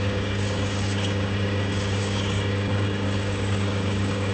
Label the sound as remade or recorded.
remade